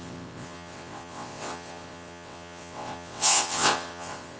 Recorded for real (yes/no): no